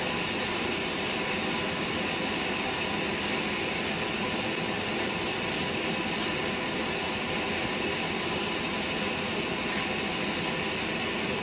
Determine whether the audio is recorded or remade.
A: recorded